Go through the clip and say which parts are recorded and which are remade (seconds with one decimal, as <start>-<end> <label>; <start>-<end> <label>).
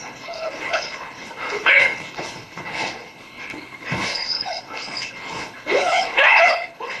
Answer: 0.0-7.0 remade